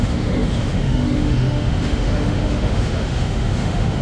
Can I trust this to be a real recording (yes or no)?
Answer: no